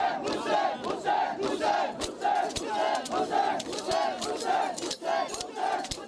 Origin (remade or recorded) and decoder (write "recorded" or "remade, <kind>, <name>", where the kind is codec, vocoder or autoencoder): recorded